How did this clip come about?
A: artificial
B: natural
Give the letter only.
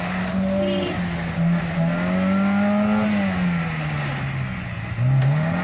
B